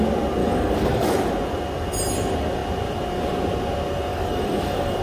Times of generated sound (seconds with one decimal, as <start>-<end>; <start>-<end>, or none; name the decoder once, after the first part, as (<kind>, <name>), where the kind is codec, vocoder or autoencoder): 0.4-1.3 (codec, DAC); 4.1-5.0